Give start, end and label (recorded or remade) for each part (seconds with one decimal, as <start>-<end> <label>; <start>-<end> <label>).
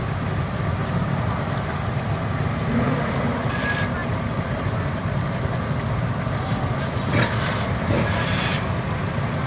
0.0-9.5 recorded